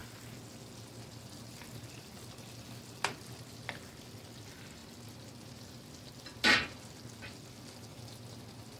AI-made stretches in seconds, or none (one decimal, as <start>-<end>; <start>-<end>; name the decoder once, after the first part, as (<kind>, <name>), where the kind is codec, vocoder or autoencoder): none